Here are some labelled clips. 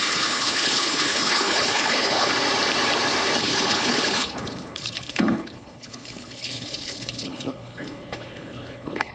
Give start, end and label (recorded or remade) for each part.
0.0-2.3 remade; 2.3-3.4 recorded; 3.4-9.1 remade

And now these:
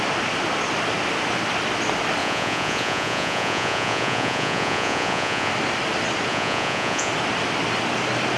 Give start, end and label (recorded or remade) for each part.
0.0-2.2 recorded; 2.2-5.5 remade; 5.5-6.3 recorded; 6.3-7.1 remade; 7.1-8.4 recorded

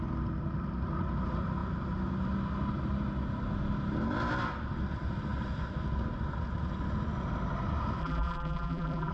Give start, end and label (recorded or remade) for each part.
0.0-8.0 recorded; 8.0-9.1 remade

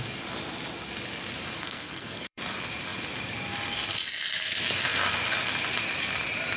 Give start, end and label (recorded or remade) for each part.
0.0-1.6 recorded; 1.6-2.4 remade; 2.4-6.6 recorded

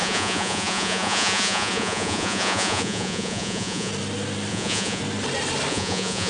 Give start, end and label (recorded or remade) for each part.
0.0-3.9 remade; 3.9-4.5 recorded; 4.5-5.0 remade; 5.0-5.7 recorded; 5.7-6.3 remade

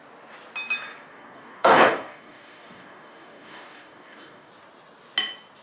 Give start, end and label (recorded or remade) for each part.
0.0-1.1 recorded; 1.1-4.5 remade; 4.5-5.6 recorded